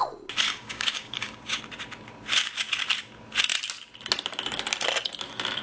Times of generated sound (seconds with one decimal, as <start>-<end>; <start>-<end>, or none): 0.5-1.6